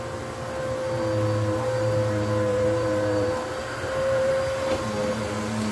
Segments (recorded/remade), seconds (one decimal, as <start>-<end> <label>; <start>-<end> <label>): 0.0-2.5 recorded; 2.5-4.3 remade; 4.3-5.7 recorded